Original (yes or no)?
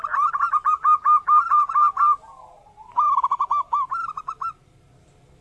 yes